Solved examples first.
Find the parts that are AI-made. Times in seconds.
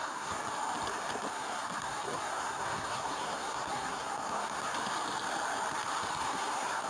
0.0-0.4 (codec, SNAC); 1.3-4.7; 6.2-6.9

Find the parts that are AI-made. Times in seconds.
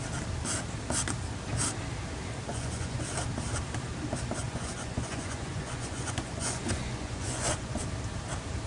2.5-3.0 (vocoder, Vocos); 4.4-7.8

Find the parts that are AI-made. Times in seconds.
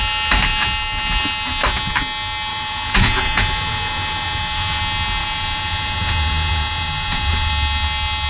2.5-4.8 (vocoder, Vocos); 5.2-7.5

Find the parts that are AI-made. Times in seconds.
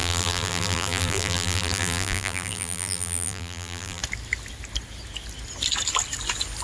0.0-4.0 (vocoder, BigVGAN v2)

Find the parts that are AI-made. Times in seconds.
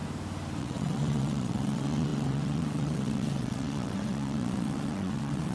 0.6-5.5 (vocoder, WaveNeXt)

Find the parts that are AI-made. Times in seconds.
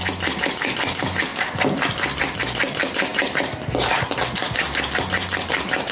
1.3-2.2 (vocoder, BigVGAN v2); 3.1-4.4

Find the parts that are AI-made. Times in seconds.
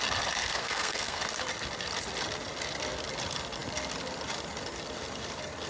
0.4-1.2 (codec, SNAC)